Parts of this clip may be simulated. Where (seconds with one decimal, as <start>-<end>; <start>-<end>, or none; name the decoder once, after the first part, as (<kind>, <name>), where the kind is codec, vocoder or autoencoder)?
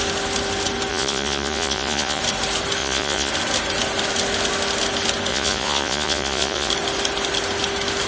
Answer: 0.9-2.2 (vocoder, Vocos); 2.8-3.3; 5.3-6.7